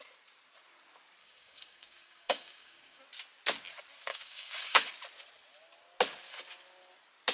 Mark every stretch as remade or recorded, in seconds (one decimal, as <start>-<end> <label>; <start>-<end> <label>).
0.0-1.2 recorded; 1.2-3.0 remade; 3.0-4.1 recorded; 4.1-4.9 remade; 4.9-7.3 recorded